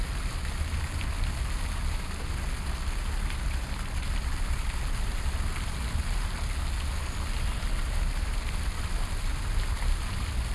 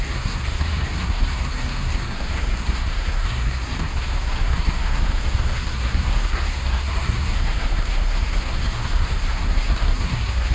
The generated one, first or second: second